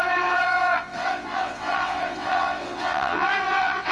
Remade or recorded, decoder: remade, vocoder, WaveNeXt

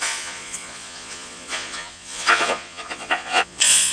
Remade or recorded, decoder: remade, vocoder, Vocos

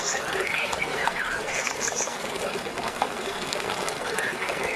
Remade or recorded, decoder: remade, codec, SNAC